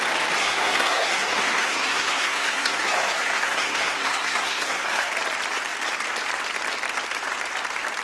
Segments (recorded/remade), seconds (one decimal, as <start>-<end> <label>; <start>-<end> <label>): 0.0-0.4 recorded; 0.4-5.1 remade; 5.1-8.0 recorded

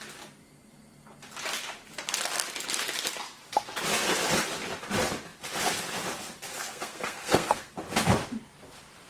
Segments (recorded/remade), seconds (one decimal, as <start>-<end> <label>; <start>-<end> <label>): 0.0-6.5 recorded; 6.5-7.7 remade; 7.7-9.1 recorded